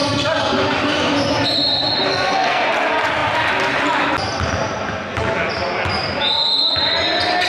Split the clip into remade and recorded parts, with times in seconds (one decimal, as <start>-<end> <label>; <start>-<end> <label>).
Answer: 0.0-2.1 recorded; 2.1-2.7 remade; 2.7-7.5 recorded